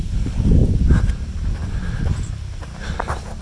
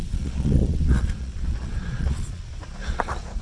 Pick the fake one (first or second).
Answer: second